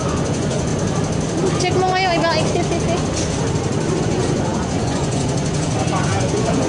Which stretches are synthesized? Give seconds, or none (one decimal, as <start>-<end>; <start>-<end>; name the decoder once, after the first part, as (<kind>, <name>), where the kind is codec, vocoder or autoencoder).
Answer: 0.0-0.7 (vocoder, Vocos); 4.0-6.7